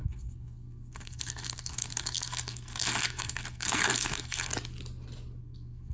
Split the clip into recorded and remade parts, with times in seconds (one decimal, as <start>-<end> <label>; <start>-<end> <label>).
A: 0.0-4.5 remade; 4.5-5.4 recorded; 5.4-5.9 remade